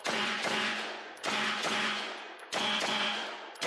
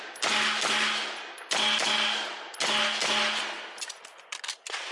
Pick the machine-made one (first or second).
first